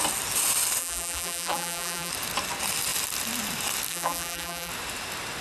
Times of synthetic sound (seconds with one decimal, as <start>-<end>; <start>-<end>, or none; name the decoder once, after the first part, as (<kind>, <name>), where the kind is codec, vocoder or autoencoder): 0.8-2.1 (vocoder, BigVGAN v2); 3.9-4.7